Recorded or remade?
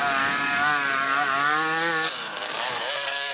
remade